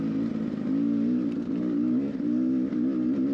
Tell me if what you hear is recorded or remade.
recorded